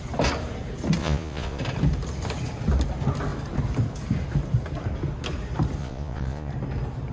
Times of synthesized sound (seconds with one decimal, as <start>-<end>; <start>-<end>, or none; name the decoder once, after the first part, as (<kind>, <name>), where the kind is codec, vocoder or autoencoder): 1.0-1.6 (vocoder, Vocos); 5.8-6.5